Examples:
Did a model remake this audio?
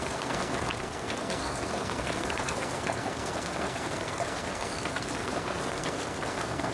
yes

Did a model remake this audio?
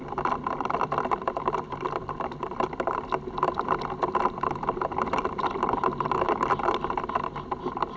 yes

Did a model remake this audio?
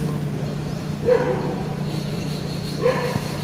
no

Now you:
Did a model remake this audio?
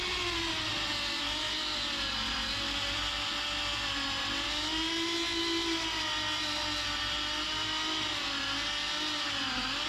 no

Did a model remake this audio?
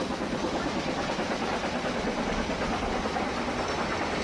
no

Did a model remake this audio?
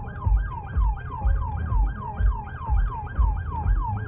yes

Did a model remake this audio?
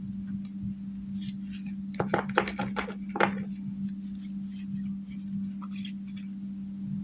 no